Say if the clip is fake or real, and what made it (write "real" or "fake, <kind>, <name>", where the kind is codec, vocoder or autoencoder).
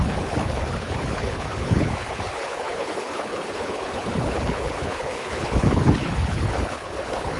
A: fake, codec, HILCodec